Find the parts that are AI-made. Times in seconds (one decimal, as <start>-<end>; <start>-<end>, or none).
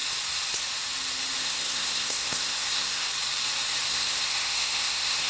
1.4-3.1; 3.9-5.3